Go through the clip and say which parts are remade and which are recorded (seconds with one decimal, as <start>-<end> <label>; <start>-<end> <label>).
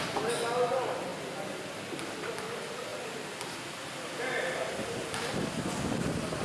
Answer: 0.0-6.4 recorded